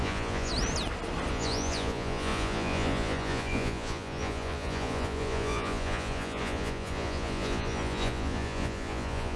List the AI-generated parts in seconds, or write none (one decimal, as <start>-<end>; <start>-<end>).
0.0-0.5; 1.3-9.4